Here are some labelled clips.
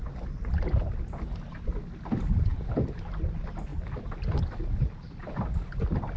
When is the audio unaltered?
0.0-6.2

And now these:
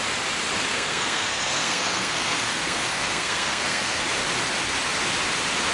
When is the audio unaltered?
0.0-0.7; 4.1-5.7

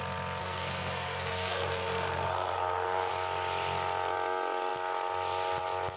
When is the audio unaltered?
0.0-0.4; 3.1-6.0

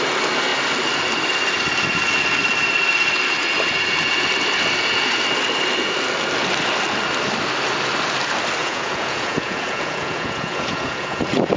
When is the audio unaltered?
0.0-8.6; 11.2-11.6

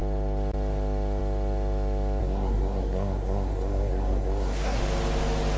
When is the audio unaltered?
0.0-2.2; 4.8-5.6

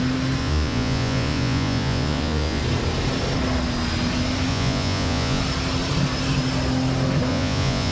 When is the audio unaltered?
0.0-0.4; 2.6-4.5; 5.4-7.3

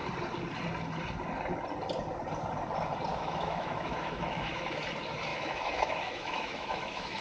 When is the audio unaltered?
0.0-3.1; 4.8-5.3

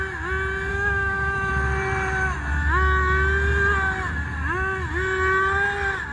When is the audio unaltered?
0.0-0.7; 1.5-6.1